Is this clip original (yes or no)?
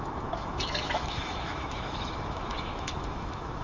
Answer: no